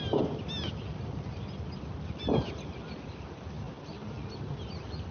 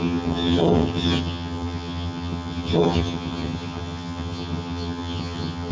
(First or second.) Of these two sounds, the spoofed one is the second